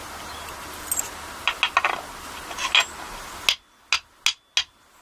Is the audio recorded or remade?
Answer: recorded